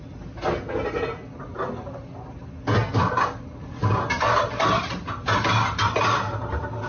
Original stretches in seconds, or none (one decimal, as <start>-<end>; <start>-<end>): 0.0-6.9